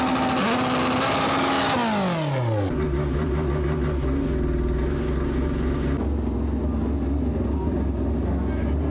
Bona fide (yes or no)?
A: yes